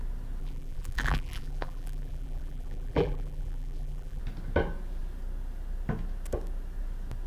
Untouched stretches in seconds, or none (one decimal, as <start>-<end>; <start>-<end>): 0.0-0.4; 4.2-7.3